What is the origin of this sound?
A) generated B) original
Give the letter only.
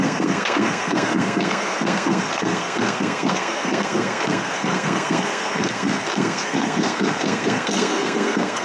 A